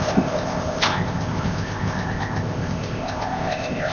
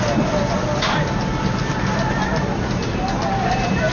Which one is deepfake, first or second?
first